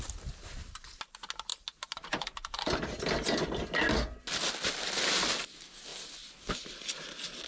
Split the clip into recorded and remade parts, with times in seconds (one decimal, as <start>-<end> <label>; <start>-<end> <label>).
0.0-7.5 recorded